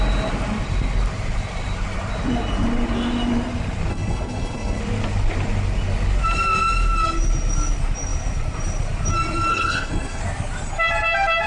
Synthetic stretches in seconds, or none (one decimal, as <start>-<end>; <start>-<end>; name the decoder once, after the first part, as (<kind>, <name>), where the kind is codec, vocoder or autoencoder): 3.9-4.8 (codec, HILCodec); 9.5-10.2